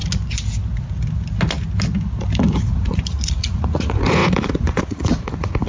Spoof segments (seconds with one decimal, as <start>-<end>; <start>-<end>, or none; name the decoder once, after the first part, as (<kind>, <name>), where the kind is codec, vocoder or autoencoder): 2.6-5.7 (vocoder, Vocos)